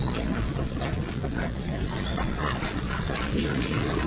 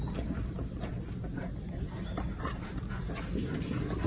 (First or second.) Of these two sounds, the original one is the second